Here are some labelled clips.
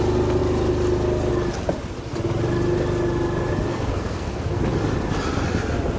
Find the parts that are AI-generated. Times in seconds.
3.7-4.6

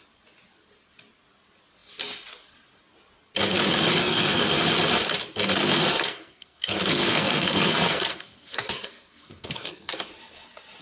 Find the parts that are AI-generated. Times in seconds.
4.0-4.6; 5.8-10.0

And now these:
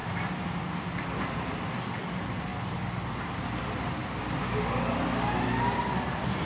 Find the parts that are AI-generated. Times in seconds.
none

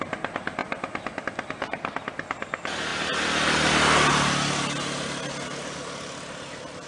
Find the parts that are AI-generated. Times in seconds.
none